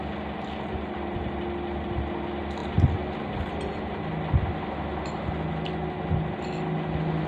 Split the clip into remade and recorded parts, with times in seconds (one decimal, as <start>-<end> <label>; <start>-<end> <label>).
0.0-7.3 recorded